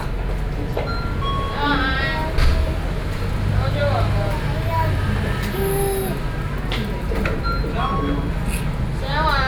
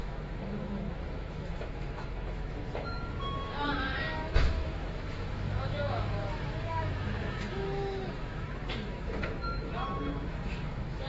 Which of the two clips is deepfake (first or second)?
second